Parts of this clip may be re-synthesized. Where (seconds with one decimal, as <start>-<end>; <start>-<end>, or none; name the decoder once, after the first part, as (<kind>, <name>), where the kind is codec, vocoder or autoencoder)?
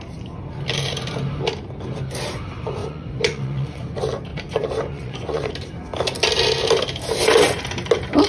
2.8-3.8 (vocoder, Vocos); 4.3-5.5